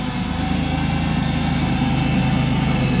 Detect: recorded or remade recorded